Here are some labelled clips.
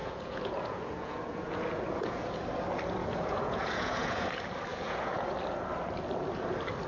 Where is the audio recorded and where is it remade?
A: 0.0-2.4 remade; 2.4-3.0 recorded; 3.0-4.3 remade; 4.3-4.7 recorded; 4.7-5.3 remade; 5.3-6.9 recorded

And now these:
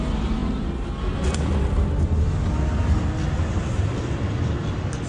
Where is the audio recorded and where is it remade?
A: 0.0-5.1 recorded

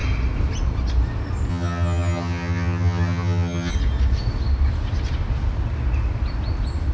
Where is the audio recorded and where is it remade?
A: 0.0-1.5 recorded; 1.5-3.7 remade; 3.7-6.9 recorded